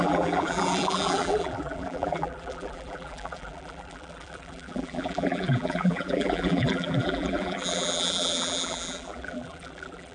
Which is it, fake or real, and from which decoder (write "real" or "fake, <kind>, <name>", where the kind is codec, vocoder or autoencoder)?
fake, vocoder, BigVGAN v2